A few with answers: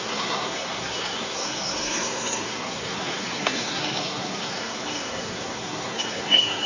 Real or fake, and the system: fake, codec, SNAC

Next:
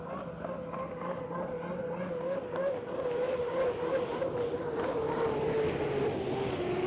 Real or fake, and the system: real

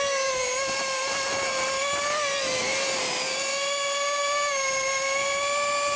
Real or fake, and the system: real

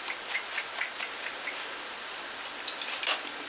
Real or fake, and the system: real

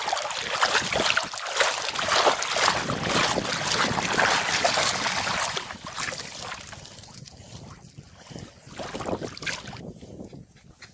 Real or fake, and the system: real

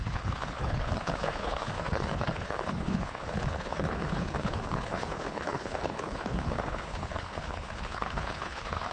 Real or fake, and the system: fake, codec, HILCodec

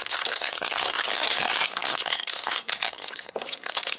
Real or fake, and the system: fake, codec, SNAC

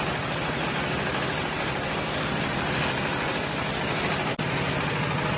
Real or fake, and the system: real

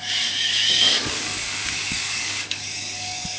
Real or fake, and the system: fake, codec, DAC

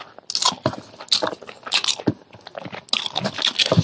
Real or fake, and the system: real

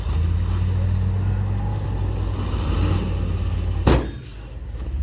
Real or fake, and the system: real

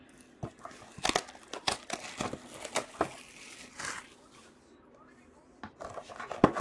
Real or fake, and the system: real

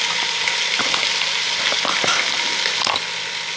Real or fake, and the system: real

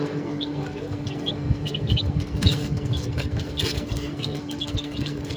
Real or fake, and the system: fake, codec, SNAC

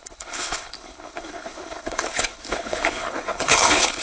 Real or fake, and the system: fake, codec, HILCodec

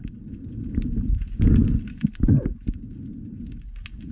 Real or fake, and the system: real